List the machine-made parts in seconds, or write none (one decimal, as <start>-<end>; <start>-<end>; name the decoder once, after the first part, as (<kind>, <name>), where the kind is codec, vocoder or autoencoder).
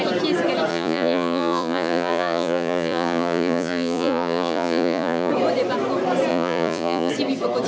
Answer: 0.7-5.3 (vocoder, Vocos); 6.3-7.1